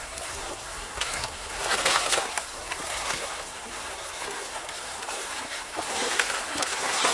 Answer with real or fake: fake